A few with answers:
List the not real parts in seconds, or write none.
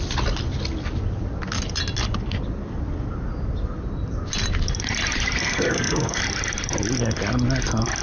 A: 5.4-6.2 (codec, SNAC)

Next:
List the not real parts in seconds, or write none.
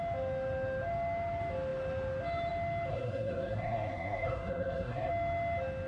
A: 2.9-5.1 (codec, SNAC)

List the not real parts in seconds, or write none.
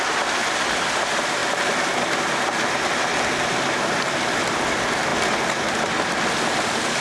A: none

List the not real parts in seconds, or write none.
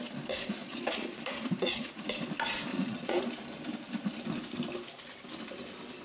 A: 0.6-1.9 (vocoder, Vocos); 2.7-3.2